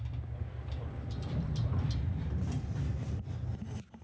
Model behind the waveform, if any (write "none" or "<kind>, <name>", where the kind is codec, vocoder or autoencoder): none